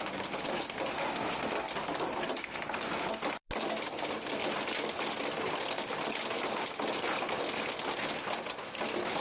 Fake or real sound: fake